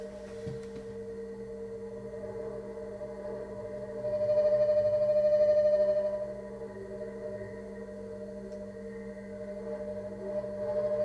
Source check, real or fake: real